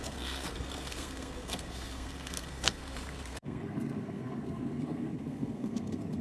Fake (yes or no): yes